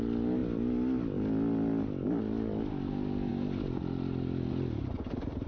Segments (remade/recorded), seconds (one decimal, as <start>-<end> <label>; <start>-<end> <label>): 0.0-5.5 recorded